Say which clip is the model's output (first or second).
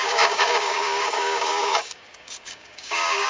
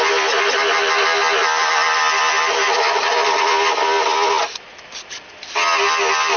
first